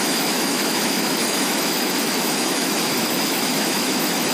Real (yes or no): no